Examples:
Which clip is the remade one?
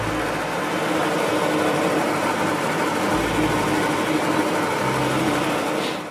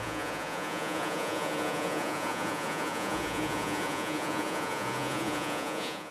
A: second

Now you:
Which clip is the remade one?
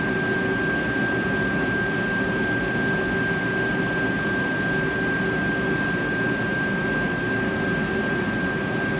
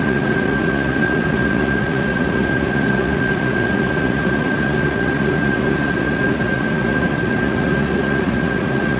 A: second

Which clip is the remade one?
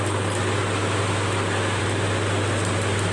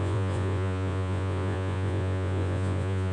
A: second